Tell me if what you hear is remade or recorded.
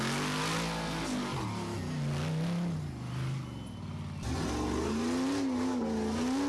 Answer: recorded